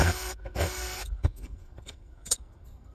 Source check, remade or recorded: remade